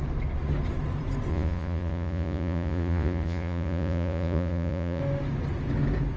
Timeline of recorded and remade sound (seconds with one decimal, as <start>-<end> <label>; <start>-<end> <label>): 0.0-1.3 recorded; 1.3-5.0 remade; 5.0-6.2 recorded